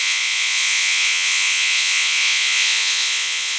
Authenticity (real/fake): fake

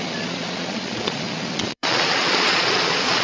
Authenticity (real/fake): fake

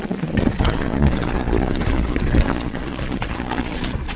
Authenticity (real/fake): fake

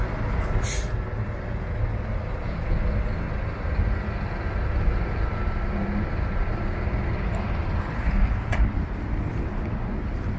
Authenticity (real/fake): real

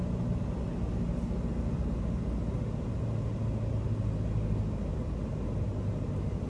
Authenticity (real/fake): real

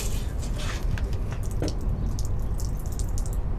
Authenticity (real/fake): real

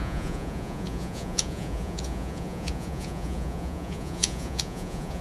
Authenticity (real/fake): fake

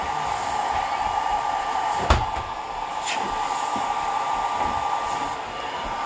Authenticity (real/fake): real